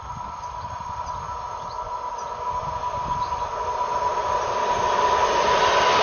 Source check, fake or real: real